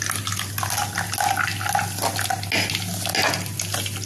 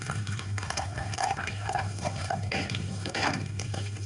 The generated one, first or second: second